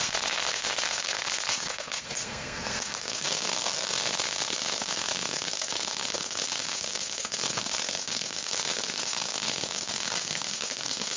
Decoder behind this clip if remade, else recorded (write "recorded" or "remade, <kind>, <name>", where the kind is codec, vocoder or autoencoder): remade, codec, SNAC